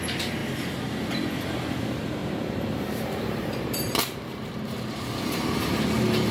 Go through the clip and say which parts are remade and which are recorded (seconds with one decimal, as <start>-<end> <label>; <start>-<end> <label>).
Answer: 0.0-2.2 recorded; 2.2-4.9 remade; 4.9-6.3 recorded